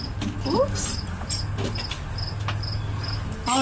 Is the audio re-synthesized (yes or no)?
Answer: no